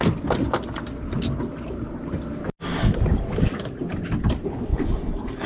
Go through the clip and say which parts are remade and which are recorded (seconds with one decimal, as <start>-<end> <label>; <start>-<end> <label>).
0.0-4.7 recorded; 4.7-5.5 remade